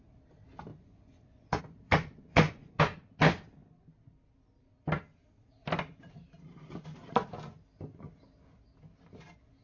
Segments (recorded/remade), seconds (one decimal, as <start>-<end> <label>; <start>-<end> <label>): 0.0-0.7 recorded; 0.7-1.6 remade; 1.6-2.3 recorded; 2.3-2.8 remade; 2.8-9.6 recorded